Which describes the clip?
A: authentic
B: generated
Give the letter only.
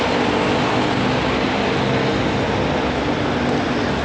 A